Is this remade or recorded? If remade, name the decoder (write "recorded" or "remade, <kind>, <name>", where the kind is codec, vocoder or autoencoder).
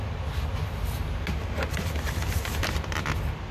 recorded